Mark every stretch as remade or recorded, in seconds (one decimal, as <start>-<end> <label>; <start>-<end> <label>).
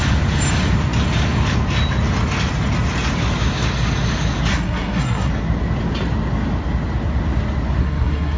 0.0-4.5 recorded; 4.5-5.3 remade; 5.3-7.8 recorded; 7.8-8.4 remade